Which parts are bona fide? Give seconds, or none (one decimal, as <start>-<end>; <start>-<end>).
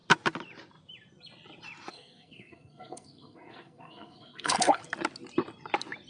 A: 0.0-1.9; 4.8-6.1